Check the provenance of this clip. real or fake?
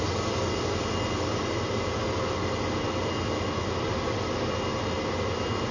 real